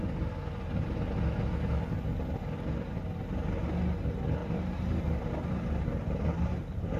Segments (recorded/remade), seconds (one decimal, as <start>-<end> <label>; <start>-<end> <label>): 0.0-4.4 recorded; 4.4-7.0 remade